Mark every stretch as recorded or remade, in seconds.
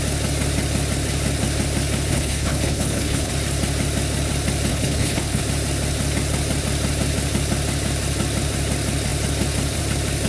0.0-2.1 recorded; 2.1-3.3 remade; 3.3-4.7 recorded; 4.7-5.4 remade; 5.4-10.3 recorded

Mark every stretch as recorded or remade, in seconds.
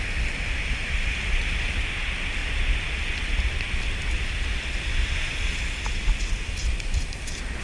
0.0-7.6 recorded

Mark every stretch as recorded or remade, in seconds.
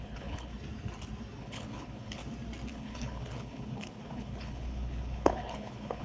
0.0-0.5 remade; 0.5-1.4 recorded; 1.4-2.2 remade; 2.2-2.7 recorded; 2.7-6.0 remade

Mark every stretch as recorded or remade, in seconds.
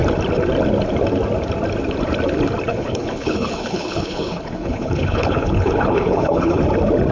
0.0-2.7 recorded; 2.7-6.6 remade; 6.6-7.1 recorded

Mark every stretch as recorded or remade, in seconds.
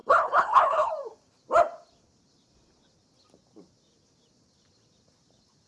0.0-0.9 remade; 0.9-5.7 recorded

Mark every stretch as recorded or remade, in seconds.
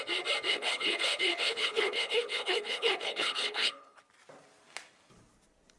0.0-0.5 recorded; 0.5-4.0 remade; 4.0-5.8 recorded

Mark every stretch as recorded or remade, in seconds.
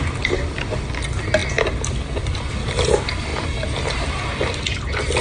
0.0-5.2 recorded